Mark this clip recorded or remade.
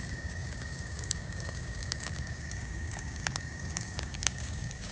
remade